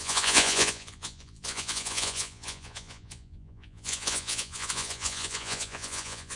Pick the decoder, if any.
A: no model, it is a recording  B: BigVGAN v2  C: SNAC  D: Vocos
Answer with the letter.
D